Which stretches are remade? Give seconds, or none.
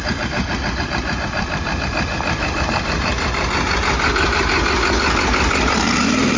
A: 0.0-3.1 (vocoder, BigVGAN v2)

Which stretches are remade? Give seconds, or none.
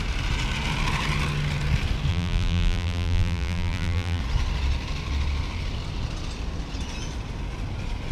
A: 2.1-4.2 (vocoder, BigVGAN v2)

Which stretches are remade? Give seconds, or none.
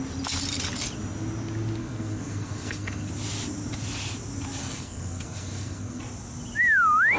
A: 1.8-3.1 (codec, SNAC); 4.6-6.0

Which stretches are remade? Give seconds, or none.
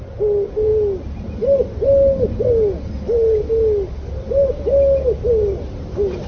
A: none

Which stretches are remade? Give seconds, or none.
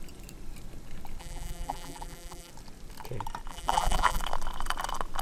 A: 1.2-2.5 (vocoder, BigVGAN v2); 3.5-4.2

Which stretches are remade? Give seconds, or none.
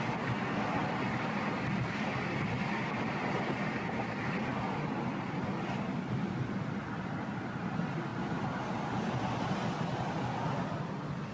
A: none